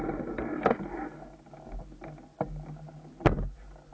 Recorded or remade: recorded